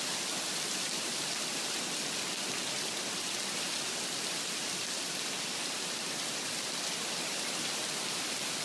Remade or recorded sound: remade